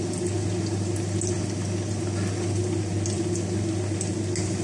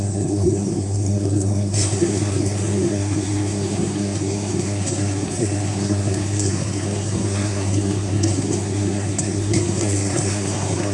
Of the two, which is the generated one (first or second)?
second